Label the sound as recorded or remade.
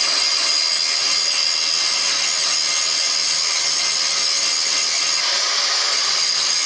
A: recorded